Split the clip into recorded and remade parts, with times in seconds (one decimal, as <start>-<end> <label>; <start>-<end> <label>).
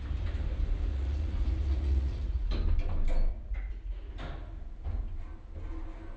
0.0-0.9 recorded; 0.9-2.5 remade; 2.5-3.3 recorded; 3.3-4.1 remade; 4.1-6.2 recorded